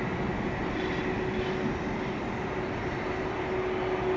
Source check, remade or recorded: recorded